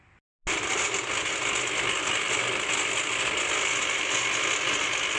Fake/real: real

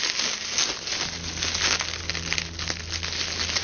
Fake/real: real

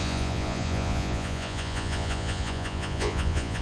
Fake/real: fake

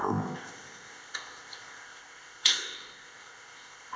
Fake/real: fake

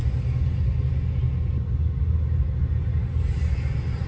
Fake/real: real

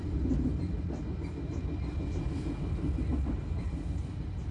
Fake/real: real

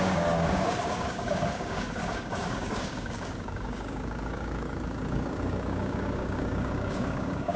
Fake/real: fake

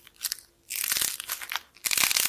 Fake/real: fake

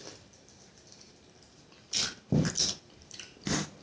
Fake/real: real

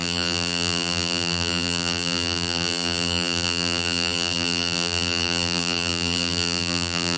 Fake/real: fake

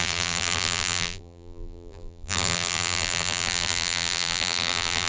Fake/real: fake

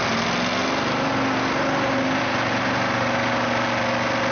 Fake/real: real